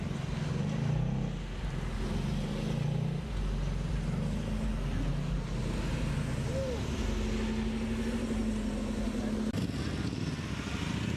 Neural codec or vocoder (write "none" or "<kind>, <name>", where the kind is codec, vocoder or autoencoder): none